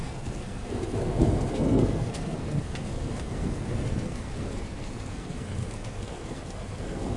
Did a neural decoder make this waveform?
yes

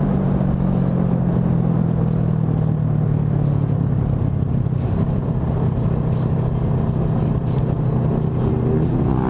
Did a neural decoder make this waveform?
no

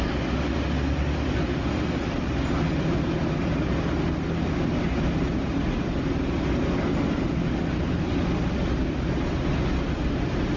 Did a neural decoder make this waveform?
no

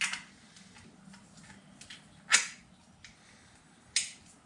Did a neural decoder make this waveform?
no